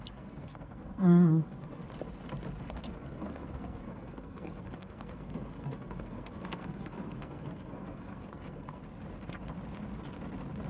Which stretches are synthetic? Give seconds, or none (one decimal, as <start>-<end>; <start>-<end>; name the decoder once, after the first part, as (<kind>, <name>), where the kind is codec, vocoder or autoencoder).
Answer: 0.0-1.8 (codec, SNAC); 2.7-8.8